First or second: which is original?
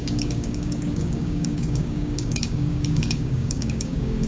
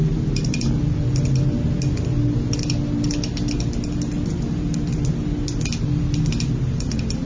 second